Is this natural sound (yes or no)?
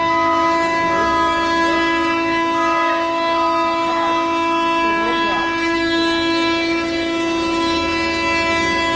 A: no